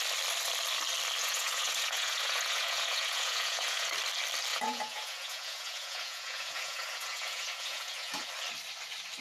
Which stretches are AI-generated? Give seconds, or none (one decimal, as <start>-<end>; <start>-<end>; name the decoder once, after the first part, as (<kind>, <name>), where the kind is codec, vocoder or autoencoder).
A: 1.2-3.9 (vocoder, Vocos); 4.5-8.3